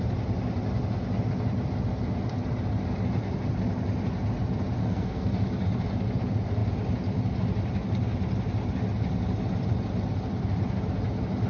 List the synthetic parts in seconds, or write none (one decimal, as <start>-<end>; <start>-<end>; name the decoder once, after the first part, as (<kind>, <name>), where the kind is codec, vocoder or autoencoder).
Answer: 4.8-5.3 (codec, SNAC)